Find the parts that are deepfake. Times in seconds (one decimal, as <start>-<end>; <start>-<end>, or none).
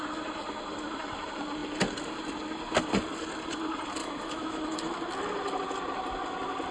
4.0-4.9